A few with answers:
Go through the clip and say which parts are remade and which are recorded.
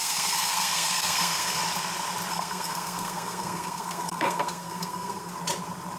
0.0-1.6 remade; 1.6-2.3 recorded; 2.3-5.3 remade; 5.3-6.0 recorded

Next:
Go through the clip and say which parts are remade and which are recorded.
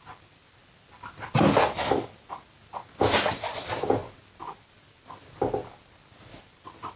0.0-7.0 recorded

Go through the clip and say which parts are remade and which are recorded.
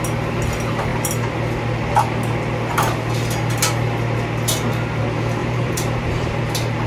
0.0-5.4 recorded; 5.4-6.4 remade; 6.4-6.9 recorded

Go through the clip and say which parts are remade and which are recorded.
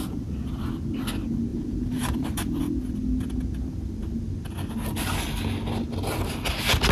0.0-1.5 recorded; 1.5-2.6 remade; 2.6-6.9 recorded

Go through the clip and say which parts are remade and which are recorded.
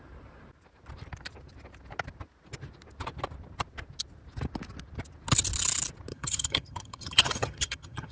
0.0-6.1 recorded; 6.1-8.1 remade